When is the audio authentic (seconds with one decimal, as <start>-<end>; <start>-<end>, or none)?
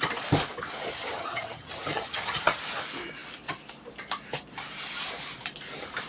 0.0-0.9; 2.6-6.1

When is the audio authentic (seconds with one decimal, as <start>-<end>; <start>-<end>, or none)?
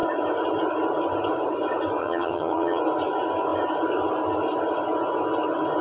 0.0-2.0; 2.8-5.8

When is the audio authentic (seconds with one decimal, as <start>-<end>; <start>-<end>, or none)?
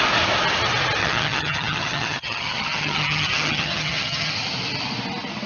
0.0-1.0; 4.3-5.5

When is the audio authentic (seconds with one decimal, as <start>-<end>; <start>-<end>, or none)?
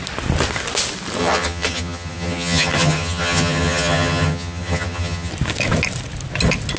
0.0-1.2; 5.3-6.8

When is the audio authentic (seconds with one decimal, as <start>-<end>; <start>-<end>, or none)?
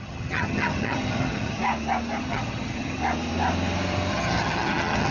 1.6-2.2; 3.0-4.1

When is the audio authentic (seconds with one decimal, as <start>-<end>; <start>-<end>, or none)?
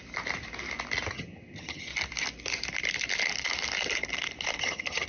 0.0-1.1; 1.9-4.6